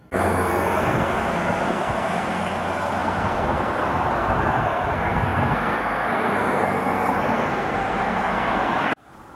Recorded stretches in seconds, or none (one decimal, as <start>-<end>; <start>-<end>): none